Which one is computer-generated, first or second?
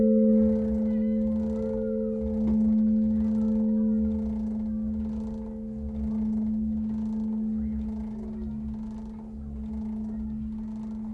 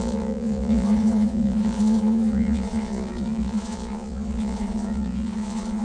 second